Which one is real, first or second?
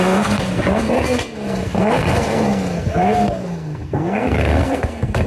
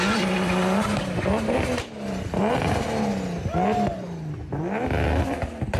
second